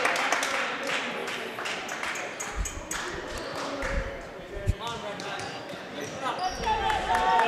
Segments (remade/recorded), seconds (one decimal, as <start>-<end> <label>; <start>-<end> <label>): 0.0-7.5 recorded